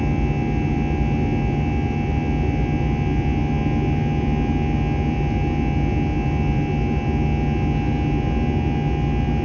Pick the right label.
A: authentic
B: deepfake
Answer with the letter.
A